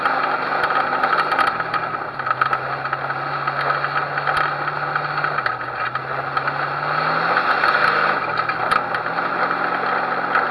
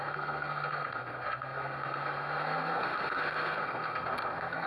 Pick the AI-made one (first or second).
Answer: second